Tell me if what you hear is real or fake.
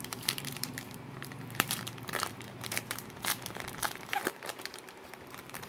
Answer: fake